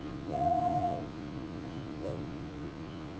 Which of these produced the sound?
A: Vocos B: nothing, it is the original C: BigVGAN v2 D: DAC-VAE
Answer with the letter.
A